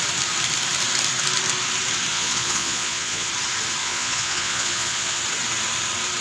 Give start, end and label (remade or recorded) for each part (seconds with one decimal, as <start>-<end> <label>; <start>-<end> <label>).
0.0-2.1 recorded; 2.1-3.3 remade; 3.3-3.8 recorded; 3.8-5.2 remade; 5.2-6.2 recorded